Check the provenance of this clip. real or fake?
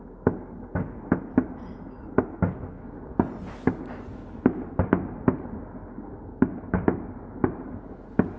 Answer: real